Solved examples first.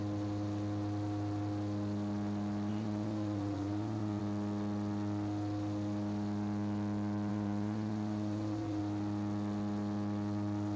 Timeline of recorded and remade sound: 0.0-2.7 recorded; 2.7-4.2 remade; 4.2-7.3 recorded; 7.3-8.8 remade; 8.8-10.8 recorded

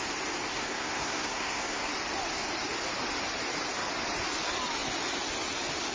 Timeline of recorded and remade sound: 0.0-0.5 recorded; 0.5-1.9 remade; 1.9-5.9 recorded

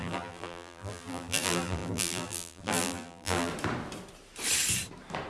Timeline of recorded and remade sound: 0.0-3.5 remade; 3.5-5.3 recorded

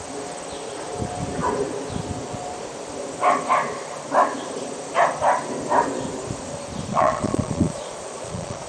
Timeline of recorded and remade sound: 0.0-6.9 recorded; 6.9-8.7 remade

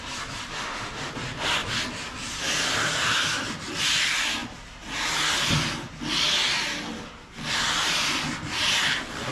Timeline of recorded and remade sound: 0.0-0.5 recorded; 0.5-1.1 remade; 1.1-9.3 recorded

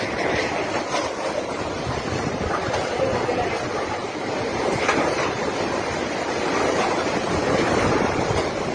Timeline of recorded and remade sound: 0.0-8.7 recorded